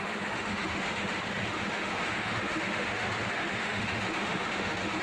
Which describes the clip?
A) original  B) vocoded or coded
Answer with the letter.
B